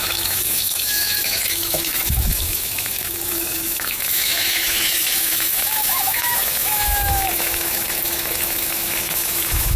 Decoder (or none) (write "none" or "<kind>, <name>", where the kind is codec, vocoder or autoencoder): autoencoder, DAC-VAE